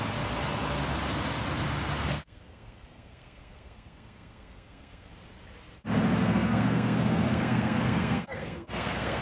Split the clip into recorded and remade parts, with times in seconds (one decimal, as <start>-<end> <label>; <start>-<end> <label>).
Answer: 0.0-2.1 recorded; 2.1-5.1 remade; 5.1-6.2 recorded; 6.2-9.2 remade